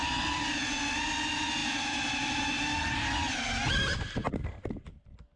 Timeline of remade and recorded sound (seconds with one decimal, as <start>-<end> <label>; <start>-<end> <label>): 0.0-0.6 remade; 0.6-1.6 recorded; 1.6-2.4 remade; 2.4-5.4 recorded